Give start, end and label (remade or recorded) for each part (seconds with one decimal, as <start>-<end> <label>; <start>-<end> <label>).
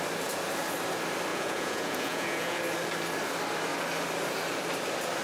0.0-1.3 recorded; 1.3-2.6 remade; 2.6-5.2 recorded